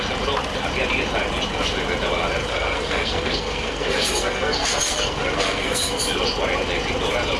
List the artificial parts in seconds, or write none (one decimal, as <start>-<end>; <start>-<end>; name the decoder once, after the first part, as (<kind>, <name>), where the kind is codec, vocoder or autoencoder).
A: 2.5-6.0 (codec, SNAC)